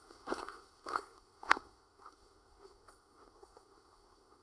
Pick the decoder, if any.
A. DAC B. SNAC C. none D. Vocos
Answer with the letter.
B